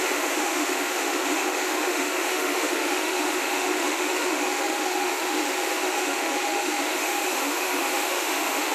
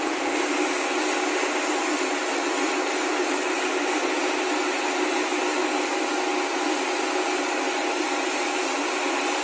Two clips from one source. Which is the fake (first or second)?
first